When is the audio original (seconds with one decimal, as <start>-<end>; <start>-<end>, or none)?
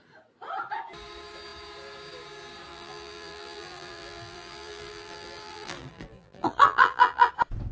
0.0-2.7; 7.3-7.7